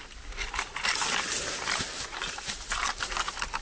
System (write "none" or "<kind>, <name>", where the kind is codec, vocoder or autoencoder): none